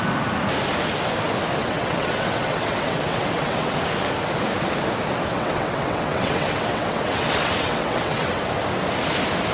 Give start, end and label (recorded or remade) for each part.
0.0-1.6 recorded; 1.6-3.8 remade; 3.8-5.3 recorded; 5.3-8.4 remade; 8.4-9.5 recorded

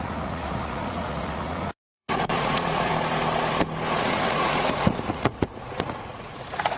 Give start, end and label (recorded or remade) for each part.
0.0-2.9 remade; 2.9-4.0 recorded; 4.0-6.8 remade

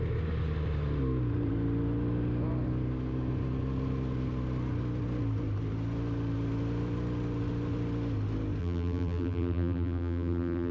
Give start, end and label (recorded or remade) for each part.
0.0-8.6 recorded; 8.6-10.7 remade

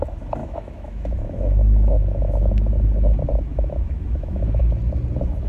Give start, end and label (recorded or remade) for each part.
0.0-0.4 recorded; 0.4-2.5 remade; 2.5-3.5 recorded; 3.5-4.6 remade; 4.6-5.5 recorded